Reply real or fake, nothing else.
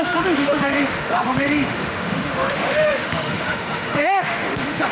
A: fake